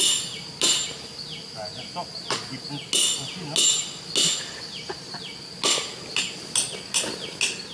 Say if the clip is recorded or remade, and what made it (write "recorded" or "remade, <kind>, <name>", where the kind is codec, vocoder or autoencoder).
recorded